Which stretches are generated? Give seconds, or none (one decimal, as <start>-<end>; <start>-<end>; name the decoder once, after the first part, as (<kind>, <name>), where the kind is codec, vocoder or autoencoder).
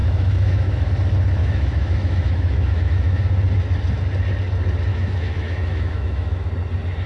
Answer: 0.0-0.9 (autoencoder, DAC-VAE); 1.4-3.2; 4.9-6.5